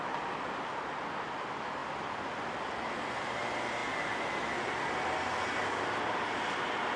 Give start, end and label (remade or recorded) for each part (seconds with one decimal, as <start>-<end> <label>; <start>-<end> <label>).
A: 0.0-7.0 recorded

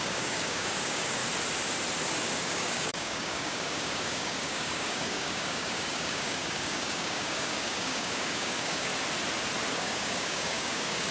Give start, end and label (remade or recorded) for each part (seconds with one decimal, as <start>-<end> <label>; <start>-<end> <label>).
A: 0.0-1.2 remade; 1.2-2.4 recorded; 2.4-8.9 remade; 8.9-9.7 recorded; 9.7-11.1 remade

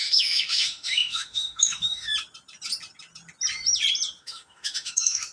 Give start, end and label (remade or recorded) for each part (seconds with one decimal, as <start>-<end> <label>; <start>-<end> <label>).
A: 0.0-2.1 remade; 2.1-4.2 recorded; 4.2-5.3 remade

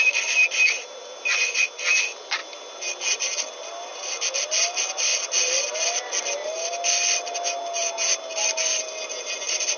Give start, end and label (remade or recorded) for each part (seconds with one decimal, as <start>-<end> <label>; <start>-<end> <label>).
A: 0.0-9.8 recorded

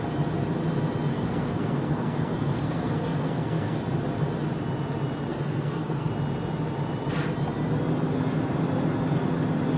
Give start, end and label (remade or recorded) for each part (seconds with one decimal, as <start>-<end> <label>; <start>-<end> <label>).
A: 0.0-1.1 recorded; 1.1-3.8 remade; 3.8-5.3 recorded; 5.3-6.1 remade; 6.1-9.8 recorded